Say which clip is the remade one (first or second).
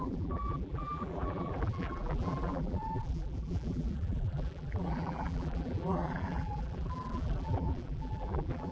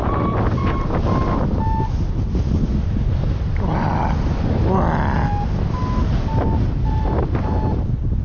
first